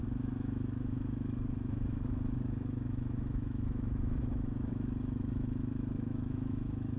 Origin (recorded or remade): remade